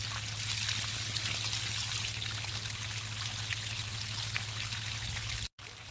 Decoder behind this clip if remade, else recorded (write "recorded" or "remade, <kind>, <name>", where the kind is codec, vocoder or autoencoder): recorded